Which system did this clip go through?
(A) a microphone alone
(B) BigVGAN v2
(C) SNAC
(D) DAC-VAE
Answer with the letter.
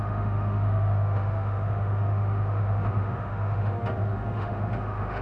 D